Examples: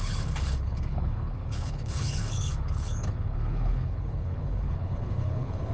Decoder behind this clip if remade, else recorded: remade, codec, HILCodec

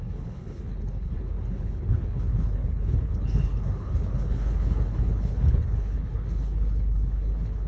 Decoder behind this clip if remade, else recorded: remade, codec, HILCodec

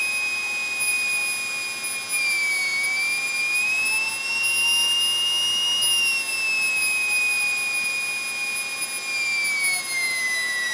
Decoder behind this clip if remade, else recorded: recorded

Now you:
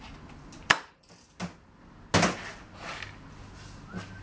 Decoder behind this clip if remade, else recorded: recorded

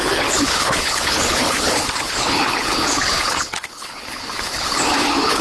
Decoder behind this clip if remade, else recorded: remade, codec, HILCodec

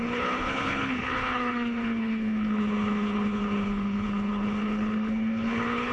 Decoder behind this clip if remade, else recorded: remade, codec, HILCodec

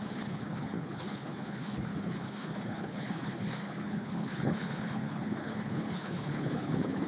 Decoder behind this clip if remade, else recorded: remade, codec, HILCodec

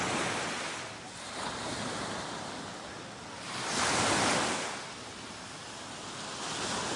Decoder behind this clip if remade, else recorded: recorded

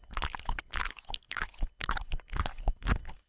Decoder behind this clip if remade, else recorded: remade, codec, HILCodec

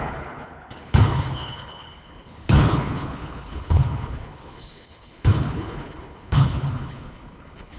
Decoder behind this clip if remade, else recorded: remade, codec, HILCodec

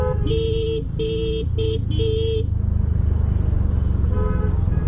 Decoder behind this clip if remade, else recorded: recorded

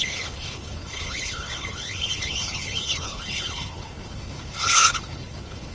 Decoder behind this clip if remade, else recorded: remade, codec, HILCodec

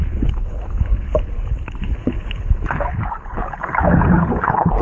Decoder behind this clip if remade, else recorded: remade, codec, HILCodec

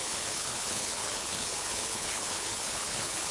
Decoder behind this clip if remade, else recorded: remade, codec, HILCodec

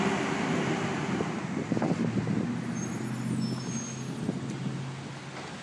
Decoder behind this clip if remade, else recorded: recorded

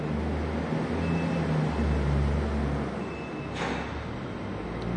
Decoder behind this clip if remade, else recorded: recorded